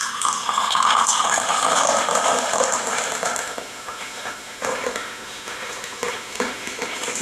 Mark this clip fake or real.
fake